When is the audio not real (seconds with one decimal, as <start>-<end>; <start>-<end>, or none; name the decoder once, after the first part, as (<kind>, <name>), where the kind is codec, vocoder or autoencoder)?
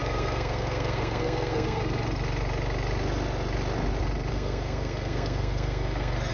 0.0-1.8 (codec, SNAC); 4.3-6.3